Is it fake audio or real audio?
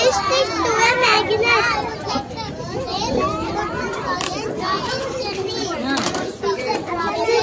fake